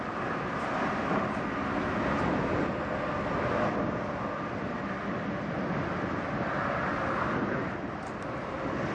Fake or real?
real